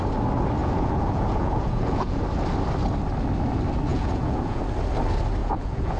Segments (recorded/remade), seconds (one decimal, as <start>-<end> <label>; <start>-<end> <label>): 0.0-0.6 recorded; 0.6-2.2 remade; 2.2-3.9 recorded; 3.9-4.6 remade; 4.6-5.4 recorded; 5.4-6.0 remade